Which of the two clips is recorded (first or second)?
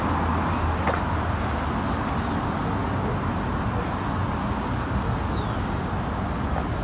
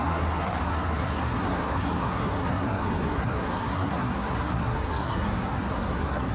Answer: first